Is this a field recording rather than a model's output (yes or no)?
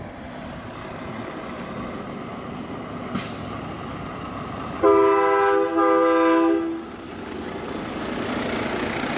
yes